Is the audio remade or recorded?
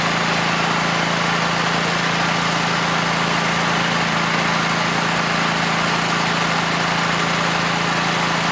recorded